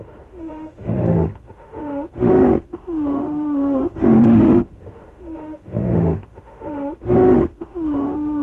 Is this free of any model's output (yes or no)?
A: no